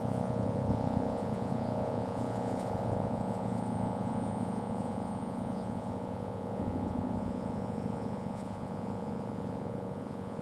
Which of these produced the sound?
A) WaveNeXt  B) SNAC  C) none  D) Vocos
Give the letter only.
D